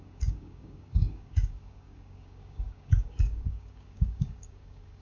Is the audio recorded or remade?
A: remade